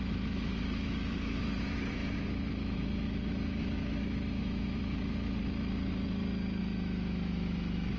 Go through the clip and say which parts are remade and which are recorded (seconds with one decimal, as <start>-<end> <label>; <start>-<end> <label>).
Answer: 0.0-5.4 remade; 5.4-6.6 recorded; 6.6-8.0 remade